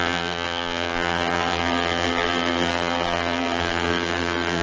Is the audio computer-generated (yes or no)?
yes